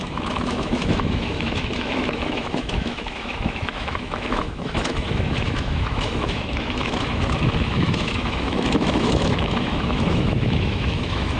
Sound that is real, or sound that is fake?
fake